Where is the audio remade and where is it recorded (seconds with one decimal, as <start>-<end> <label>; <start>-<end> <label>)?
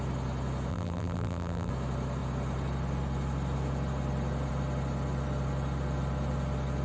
0.0-0.7 recorded; 0.7-1.7 remade; 1.7-6.8 recorded